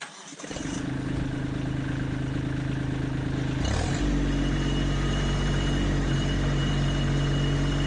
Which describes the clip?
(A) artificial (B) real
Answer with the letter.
B